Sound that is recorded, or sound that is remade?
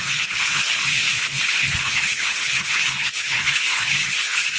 remade